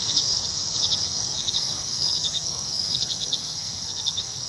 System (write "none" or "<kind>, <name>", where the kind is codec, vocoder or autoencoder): codec, SNAC